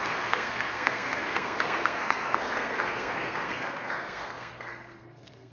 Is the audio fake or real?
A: fake